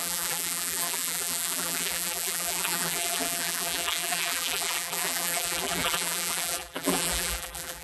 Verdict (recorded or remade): remade